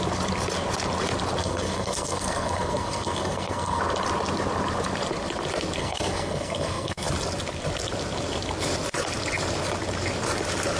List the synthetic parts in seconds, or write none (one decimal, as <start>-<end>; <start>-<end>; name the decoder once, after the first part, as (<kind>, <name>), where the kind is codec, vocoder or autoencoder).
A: 1.4-3.8 (codec, SNAC); 5.8-7.1